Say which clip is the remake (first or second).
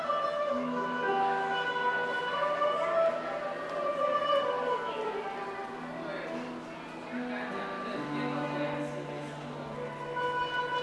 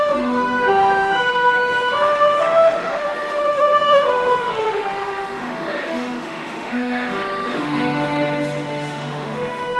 second